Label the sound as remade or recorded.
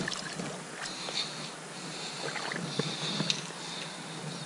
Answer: recorded